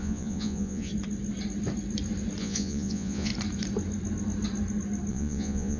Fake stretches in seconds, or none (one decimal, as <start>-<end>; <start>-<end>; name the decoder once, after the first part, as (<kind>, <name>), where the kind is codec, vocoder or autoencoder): 0.0-0.9 (vocoder, Vocos); 2.4-3.3; 5.1-5.8